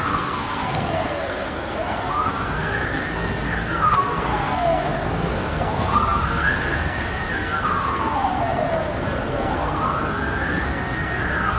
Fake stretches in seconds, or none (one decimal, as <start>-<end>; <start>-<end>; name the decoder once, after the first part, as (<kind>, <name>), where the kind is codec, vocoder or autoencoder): 0.0-11.6 (codec, SNAC)

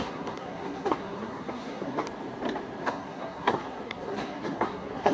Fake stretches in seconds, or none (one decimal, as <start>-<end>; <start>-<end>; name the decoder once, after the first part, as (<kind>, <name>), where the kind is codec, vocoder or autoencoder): 0.0-2.0 (codec, SNAC); 2.8-5.1

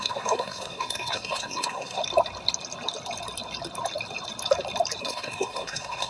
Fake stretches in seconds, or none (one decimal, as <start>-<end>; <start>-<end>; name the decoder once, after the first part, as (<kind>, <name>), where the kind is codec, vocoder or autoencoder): 0.0-2.0 (codec, SNAC); 5.0-6.1

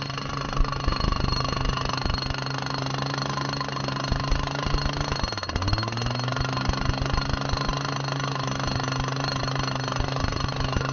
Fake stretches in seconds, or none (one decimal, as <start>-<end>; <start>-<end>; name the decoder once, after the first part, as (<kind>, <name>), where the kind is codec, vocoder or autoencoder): none

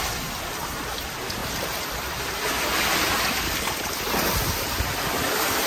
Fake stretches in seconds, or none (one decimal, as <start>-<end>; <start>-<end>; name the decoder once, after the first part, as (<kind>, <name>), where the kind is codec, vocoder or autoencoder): none